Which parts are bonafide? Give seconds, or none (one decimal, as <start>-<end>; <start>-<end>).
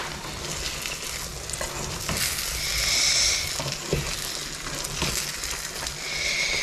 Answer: 0.0-6.6